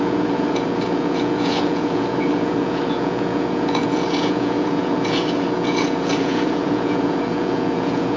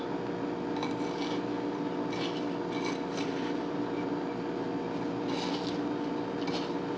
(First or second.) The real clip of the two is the second